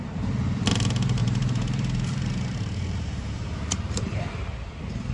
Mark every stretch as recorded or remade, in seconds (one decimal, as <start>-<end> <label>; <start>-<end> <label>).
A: 0.0-1.2 recorded; 1.2-4.3 remade; 4.3-5.1 recorded